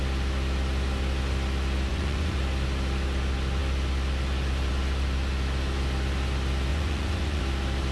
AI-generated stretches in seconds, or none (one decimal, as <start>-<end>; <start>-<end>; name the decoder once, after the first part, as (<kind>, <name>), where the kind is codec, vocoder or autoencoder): 1.9-2.4 (vocoder, Vocos); 6.7-7.4